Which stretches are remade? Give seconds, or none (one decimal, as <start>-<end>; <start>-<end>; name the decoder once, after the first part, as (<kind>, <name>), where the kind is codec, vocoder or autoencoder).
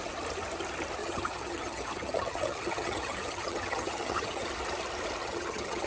1.0-4.5 (vocoder, HiFi-GAN); 5.2-5.9